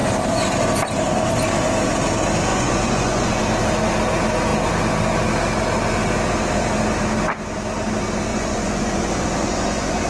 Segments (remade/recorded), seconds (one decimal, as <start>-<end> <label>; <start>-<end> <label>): 0.0-2.5 recorded; 2.5-3.4 remade; 3.4-8.3 recorded; 8.3-10.1 remade

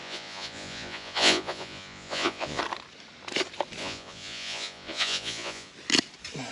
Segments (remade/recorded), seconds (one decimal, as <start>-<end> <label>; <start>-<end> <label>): 0.0-2.6 remade; 2.6-3.8 recorded; 3.8-5.7 remade; 5.7-6.5 recorded

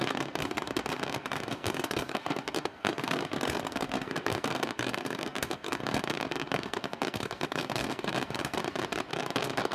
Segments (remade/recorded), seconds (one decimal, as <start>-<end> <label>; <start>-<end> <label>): 0.0-8.6 remade; 8.6-9.1 recorded; 9.1-9.7 remade

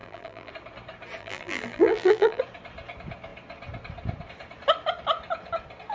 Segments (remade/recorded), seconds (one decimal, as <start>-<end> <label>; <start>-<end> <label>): 0.0-0.5 remade; 0.5-1.2 recorded; 1.2-2.4 remade; 2.4-5.9 recorded

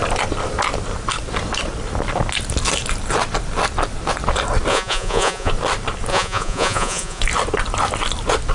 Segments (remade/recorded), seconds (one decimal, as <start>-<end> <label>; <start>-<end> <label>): 0.0-4.7 recorded; 4.7-5.5 remade; 5.5-6.1 recorded; 6.1-7.2 remade; 7.2-8.5 recorded

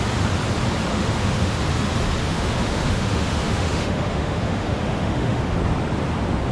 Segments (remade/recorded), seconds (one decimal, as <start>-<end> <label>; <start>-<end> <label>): 0.0-0.9 recorded; 0.9-1.6 remade; 1.6-2.2 recorded; 2.2-5.6 remade; 5.6-6.5 recorded

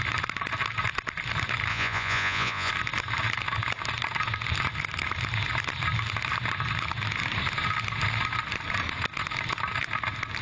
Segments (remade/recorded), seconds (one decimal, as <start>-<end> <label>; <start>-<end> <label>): 0.0-1.7 recorded; 1.7-2.7 remade; 2.7-10.4 recorded

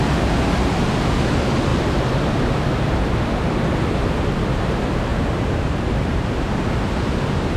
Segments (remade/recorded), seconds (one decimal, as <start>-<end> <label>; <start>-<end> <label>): 0.0-1.7 recorded; 1.7-2.5 remade; 2.5-5.1 recorded; 5.1-6.5 remade; 6.5-7.6 recorded